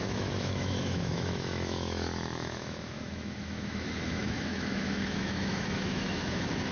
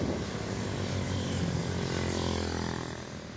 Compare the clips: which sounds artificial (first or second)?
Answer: first